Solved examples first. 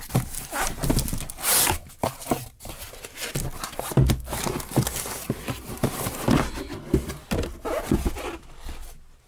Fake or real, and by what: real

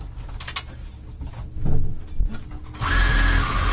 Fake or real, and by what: real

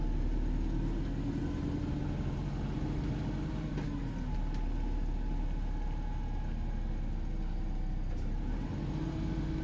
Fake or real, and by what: real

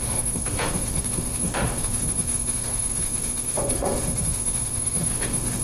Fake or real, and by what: fake, autoencoder, DAC-VAE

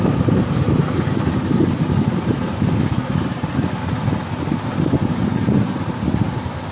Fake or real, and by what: real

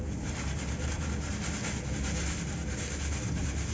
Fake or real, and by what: real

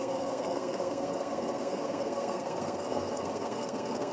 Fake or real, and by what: fake, codec, SNAC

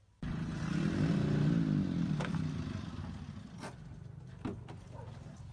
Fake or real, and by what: real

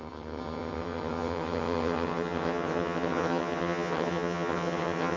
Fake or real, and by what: fake, vocoder, HiFi-GAN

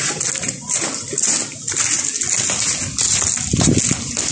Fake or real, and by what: real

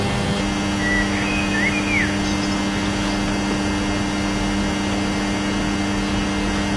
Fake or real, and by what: real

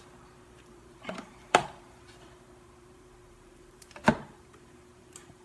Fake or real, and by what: fake, vocoder, BigVGAN v2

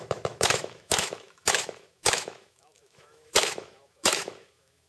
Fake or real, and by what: fake, autoencoder, DAC-VAE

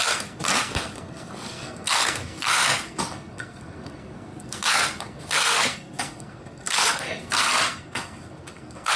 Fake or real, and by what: fake, codec, SNAC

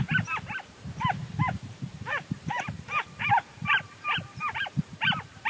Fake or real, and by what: fake, vocoder, BigVGAN v2